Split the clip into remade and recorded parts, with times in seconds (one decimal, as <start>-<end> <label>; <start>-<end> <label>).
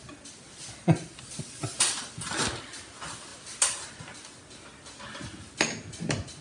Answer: 0.0-6.4 recorded